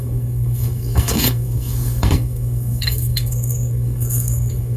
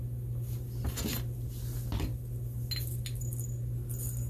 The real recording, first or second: second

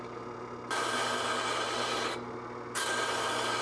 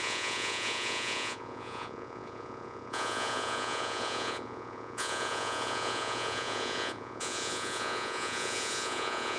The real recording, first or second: first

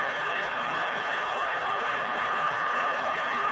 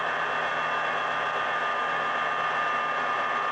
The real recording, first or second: second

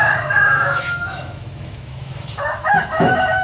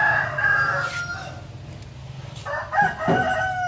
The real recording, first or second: second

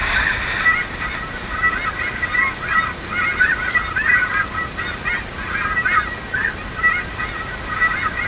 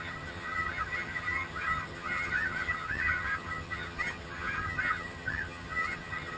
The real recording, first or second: first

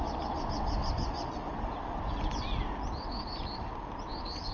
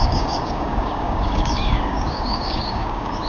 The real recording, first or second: first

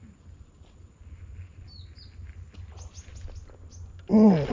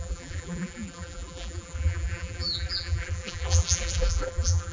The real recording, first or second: first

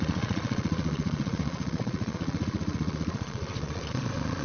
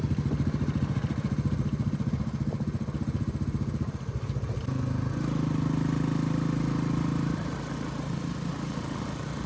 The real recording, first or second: second